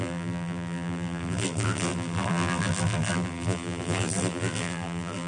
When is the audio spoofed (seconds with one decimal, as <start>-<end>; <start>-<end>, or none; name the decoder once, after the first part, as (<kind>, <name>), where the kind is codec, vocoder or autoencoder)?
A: 0.0-5.3 (vocoder, BigVGAN v2)